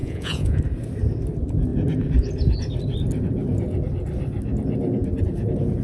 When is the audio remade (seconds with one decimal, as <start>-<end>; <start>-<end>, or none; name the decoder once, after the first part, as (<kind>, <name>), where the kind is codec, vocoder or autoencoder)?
0.0-0.6 (vocoder, Vocos)